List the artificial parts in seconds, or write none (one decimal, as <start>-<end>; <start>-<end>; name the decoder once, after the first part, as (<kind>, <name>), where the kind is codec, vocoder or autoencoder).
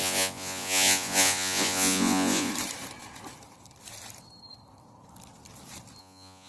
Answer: 0.0-2.5 (vocoder, Vocos); 6.0-6.5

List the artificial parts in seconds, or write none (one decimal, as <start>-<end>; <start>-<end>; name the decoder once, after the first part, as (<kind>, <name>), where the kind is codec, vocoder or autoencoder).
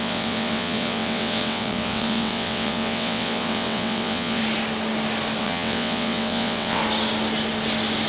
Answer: 0.0-4.4 (vocoder, WaveNeXt); 5.4-6.8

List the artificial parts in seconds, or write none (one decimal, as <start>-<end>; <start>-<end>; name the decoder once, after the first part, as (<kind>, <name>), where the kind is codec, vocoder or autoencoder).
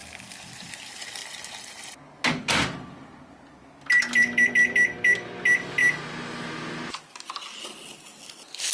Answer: 0.0-0.7 (vocoder, BigVGAN v2)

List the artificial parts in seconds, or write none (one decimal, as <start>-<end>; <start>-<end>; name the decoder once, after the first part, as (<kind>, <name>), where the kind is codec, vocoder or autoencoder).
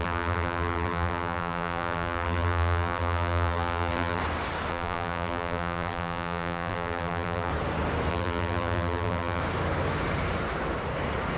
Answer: 0.0-4.2 (vocoder, BigVGAN v2); 4.7-7.5; 8.1-9.4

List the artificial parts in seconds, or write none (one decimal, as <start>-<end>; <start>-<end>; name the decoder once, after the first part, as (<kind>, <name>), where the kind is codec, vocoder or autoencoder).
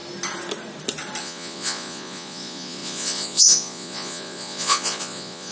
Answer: 1.2-5.5 (vocoder, Vocos)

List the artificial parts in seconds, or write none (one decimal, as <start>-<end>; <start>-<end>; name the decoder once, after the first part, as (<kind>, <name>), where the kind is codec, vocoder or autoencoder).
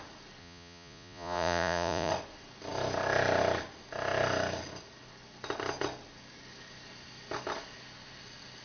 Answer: 0.4-2.1 (vocoder, Vocos)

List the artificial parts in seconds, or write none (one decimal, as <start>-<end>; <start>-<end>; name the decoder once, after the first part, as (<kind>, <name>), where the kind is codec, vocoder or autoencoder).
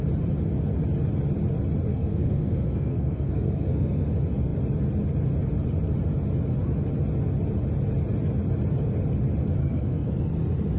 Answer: 1.9-4.1 (codec, SNAC); 9.6-10.1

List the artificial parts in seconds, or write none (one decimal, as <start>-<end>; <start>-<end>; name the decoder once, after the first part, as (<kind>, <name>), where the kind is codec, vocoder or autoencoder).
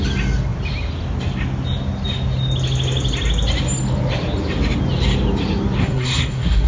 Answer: 5.8-6.7 (codec, SNAC)